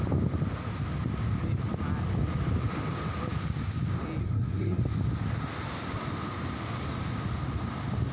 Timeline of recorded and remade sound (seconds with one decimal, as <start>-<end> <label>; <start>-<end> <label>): 0.0-4.2 recorded; 4.2-4.8 remade; 4.8-8.1 recorded